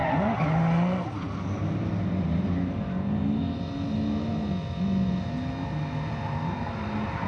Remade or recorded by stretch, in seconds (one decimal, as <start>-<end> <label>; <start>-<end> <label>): 0.0-7.3 recorded